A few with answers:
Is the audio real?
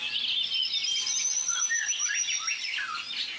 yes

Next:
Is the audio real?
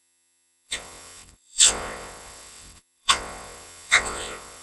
no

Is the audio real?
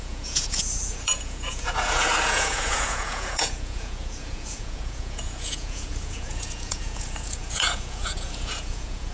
no